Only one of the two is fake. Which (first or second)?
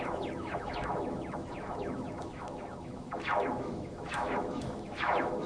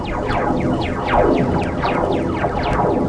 first